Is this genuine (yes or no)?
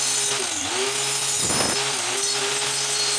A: yes